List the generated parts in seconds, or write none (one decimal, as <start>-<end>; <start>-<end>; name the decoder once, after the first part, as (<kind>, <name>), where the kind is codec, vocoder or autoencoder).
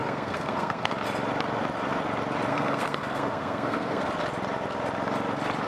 0.0-0.9 (codec, SNAC); 2.5-4.1